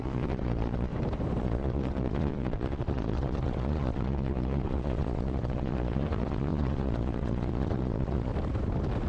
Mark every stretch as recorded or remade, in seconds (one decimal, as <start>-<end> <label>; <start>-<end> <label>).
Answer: 0.0-0.9 remade; 0.9-1.4 recorded; 1.4-8.3 remade; 8.3-9.1 recorded